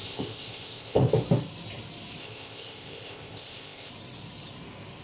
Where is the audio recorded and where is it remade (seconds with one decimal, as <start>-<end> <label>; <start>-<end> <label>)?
0.0-1.1 remade; 1.1-2.2 recorded; 2.2-3.9 remade; 3.9-5.0 recorded